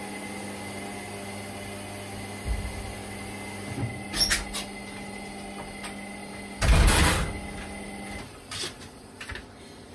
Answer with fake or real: real